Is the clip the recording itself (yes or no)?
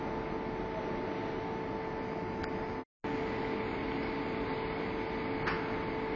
yes